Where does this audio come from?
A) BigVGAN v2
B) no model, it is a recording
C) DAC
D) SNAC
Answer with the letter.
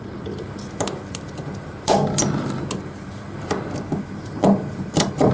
A